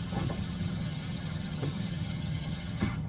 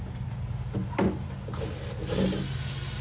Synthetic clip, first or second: first